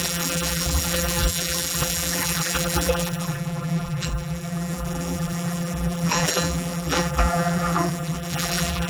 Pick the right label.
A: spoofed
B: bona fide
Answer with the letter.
A